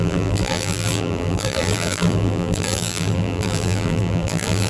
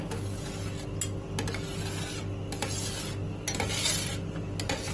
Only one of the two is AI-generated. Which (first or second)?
first